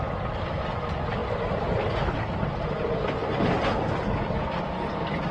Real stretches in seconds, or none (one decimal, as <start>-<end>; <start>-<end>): 0.0-5.3